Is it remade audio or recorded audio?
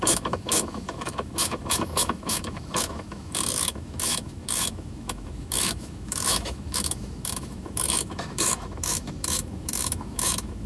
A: remade